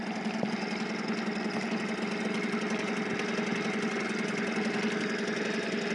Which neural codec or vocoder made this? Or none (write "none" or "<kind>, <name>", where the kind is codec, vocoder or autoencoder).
none